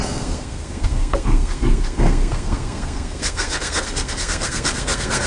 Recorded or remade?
remade